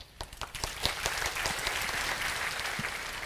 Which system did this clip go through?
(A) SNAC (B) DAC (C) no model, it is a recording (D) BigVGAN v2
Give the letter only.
C